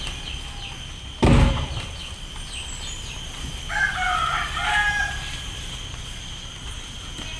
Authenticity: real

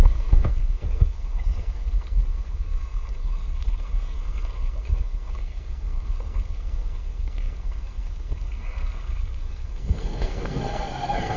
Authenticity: fake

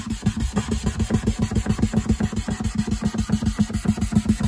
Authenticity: real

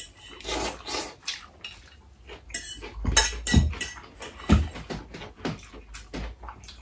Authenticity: real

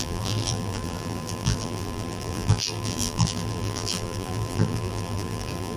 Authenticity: fake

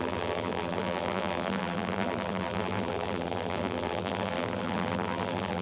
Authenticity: fake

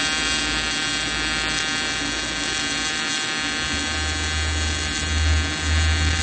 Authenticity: real